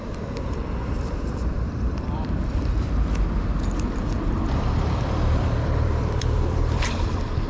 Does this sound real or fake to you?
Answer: fake